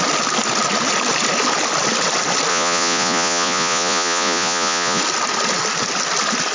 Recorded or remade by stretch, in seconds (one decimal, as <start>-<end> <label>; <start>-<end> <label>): 0.0-2.5 recorded; 2.5-5.0 remade; 5.0-6.5 recorded